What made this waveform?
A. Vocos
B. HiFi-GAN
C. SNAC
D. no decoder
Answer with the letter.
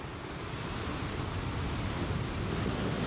D